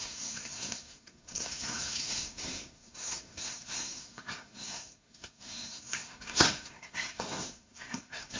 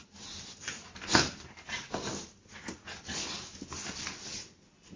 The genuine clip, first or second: second